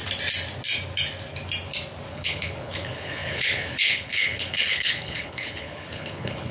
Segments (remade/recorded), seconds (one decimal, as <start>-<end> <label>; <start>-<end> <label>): 0.0-2.1 recorded; 2.1-6.5 remade